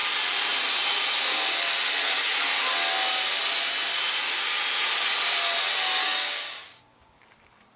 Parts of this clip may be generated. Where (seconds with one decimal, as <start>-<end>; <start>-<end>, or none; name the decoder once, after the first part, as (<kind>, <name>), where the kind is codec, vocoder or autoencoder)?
6.0-7.2 (codec, DAC)